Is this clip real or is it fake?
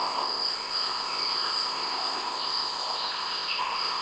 fake